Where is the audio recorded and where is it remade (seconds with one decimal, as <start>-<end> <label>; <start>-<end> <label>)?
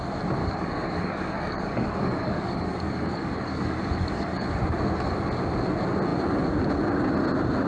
0.0-0.4 recorded; 0.4-4.6 remade; 4.6-7.7 recorded